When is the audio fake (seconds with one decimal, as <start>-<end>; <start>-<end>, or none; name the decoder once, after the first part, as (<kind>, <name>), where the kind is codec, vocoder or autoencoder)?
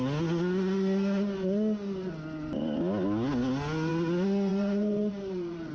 4.5-5.7 (vocoder, BigVGAN v2)